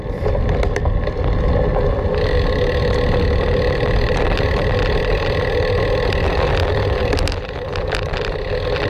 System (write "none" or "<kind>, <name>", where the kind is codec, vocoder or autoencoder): none